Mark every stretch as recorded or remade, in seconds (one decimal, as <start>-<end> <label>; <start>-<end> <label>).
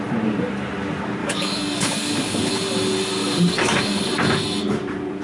0.0-1.2 recorded; 1.2-2.5 remade; 2.5-3.2 recorded; 3.2-4.1 remade; 4.1-5.2 recorded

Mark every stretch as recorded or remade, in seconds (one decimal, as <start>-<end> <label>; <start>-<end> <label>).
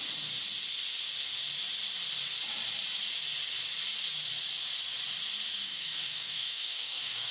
0.0-5.6 recorded; 5.6-7.3 remade